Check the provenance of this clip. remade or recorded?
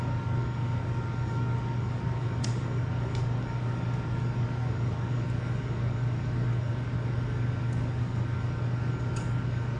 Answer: remade